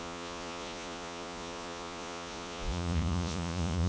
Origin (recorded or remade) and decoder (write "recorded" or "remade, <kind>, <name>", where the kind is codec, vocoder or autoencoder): remade, vocoder, Vocos